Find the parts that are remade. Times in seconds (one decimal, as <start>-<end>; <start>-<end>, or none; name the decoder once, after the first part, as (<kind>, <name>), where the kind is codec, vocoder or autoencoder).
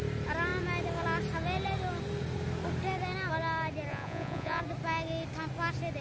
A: 3.9-4.6 (vocoder, Vocos)